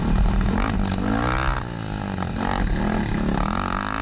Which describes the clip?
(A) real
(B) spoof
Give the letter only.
A